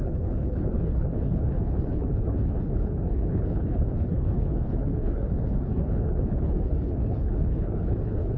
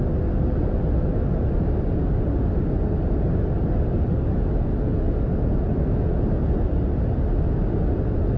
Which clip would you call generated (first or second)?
first